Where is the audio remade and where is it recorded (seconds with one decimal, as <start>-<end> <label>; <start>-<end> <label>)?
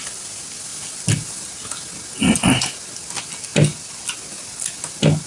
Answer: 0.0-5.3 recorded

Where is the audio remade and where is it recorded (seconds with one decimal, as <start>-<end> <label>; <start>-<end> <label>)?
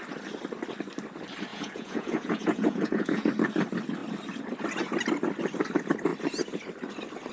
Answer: 0.0-1.5 recorded; 1.5-3.3 remade; 3.3-7.3 recorded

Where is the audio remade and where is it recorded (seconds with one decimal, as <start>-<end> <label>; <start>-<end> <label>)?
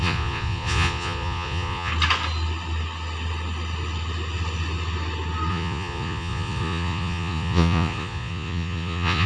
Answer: 0.0-1.9 remade; 1.9-5.5 recorded; 5.5-9.3 remade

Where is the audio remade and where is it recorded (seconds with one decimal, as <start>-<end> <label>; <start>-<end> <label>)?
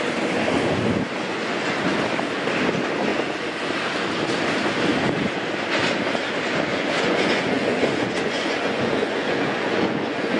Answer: 0.0-1.2 recorded; 1.2-1.9 remade; 1.9-3.1 recorded; 3.1-3.7 remade; 3.7-6.7 recorded; 6.7-10.4 remade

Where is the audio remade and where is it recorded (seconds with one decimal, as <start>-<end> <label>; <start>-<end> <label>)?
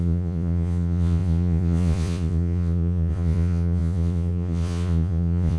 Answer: 0.0-5.6 remade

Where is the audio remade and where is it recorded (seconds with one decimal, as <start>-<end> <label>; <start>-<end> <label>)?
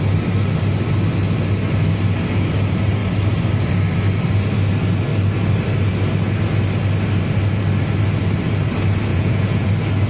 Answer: 0.0-9.1 recorded; 9.1-9.7 remade; 9.7-10.1 recorded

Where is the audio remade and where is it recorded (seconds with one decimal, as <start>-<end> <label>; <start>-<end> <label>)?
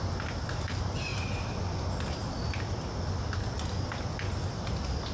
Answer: 0.0-5.1 recorded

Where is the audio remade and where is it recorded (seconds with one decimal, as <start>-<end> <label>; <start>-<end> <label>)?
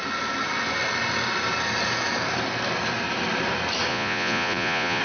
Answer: 0.0-3.9 recorded; 3.9-5.0 remade